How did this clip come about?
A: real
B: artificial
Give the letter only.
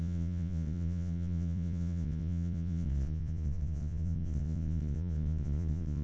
B